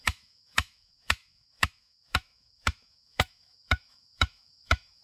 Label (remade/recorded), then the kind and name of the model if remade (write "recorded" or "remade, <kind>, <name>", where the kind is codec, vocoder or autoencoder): remade, autoencoder, DAC-VAE